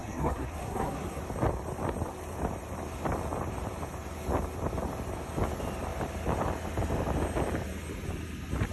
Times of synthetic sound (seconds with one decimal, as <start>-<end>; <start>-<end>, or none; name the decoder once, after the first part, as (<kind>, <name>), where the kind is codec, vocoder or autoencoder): 0.0-1.2 (codec, SNAC)